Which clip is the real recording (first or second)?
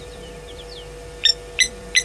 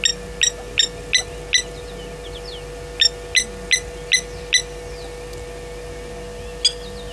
second